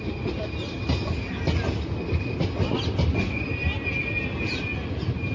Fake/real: real